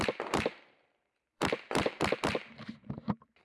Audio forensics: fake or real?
fake